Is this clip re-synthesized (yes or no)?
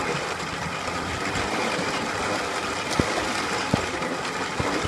yes